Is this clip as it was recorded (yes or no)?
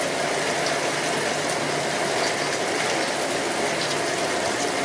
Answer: yes